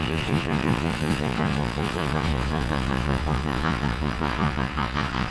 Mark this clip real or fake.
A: fake